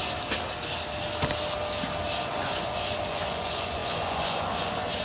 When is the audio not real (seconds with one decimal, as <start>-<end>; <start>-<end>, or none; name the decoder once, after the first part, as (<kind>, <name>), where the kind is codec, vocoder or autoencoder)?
2.3-5.0 (vocoder, Vocos)